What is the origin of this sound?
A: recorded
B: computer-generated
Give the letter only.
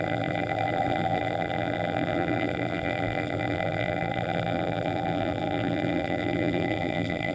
B